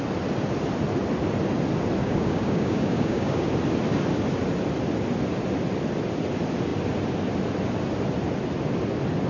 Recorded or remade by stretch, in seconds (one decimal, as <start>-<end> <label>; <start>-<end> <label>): 0.0-2.0 recorded; 2.0-3.5 remade; 3.5-9.3 recorded